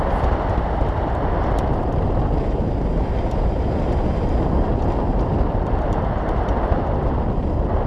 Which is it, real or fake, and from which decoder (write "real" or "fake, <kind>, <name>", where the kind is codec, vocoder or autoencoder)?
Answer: real